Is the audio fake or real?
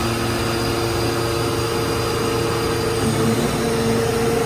real